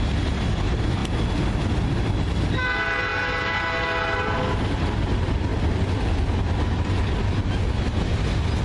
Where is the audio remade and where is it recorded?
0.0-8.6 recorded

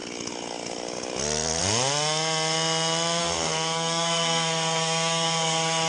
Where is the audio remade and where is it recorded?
0.0-3.2 recorded; 3.2-5.9 remade

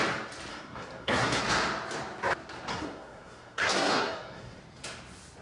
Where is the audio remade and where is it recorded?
0.0-0.5 recorded; 0.5-1.4 remade; 1.4-2.7 recorded; 2.7-4.6 remade; 4.6-5.4 recorded

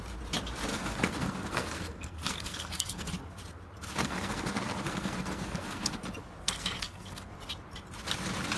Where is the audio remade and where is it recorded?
0.0-0.7 recorded; 0.7-3.1 remade; 3.1-4.0 recorded; 4.0-6.0 remade; 6.0-6.4 recorded; 6.4-7.3 remade; 7.3-8.6 recorded